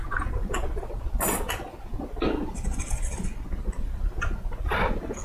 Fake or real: real